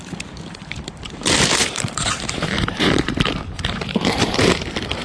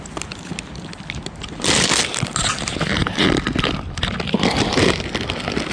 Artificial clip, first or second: first